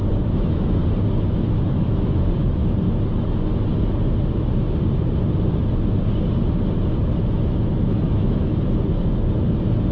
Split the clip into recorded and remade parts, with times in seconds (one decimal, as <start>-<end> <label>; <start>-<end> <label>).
0.0-0.8 remade; 0.8-1.5 recorded; 1.5-2.6 remade; 2.6-7.2 recorded; 7.2-8.5 remade; 8.5-9.9 recorded